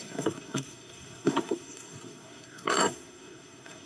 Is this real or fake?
fake